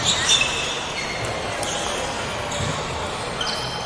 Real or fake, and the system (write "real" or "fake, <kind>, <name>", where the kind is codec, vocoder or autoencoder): real